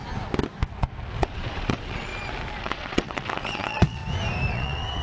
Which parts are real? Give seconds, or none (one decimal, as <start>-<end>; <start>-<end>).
0.0-1.2; 2.1-2.6; 4.0-4.5